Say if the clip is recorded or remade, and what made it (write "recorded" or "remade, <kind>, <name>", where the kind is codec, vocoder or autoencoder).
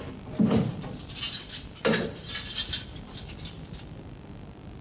recorded